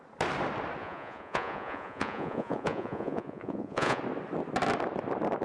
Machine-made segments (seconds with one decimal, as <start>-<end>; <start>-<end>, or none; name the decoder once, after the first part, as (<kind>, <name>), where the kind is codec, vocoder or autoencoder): 0.8-4.0 (vocoder, Vocos)